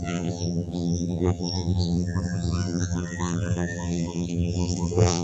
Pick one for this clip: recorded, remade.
remade